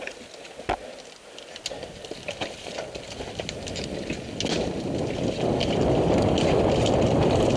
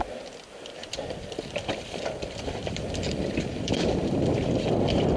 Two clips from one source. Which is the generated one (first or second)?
second